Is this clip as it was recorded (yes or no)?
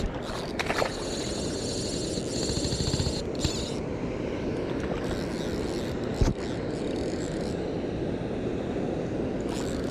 yes